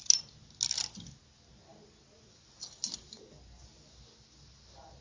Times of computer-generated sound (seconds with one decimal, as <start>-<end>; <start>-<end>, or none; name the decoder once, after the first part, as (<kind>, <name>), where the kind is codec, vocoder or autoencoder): none